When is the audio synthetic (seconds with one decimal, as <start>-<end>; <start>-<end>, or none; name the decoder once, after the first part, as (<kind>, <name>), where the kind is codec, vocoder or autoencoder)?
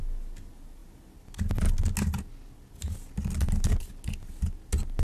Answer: none